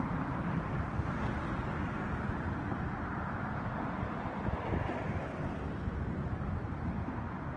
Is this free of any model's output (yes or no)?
yes